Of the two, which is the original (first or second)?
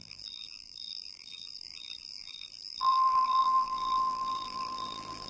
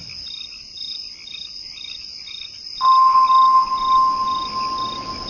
second